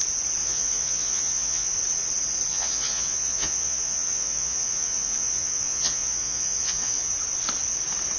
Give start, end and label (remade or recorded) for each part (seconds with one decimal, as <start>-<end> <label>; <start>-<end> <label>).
0.0-0.4 recorded; 0.4-1.7 remade; 1.7-2.5 recorded; 2.5-7.1 remade; 7.1-8.2 recorded